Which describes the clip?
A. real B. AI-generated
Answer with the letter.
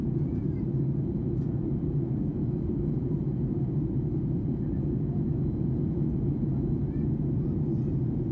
B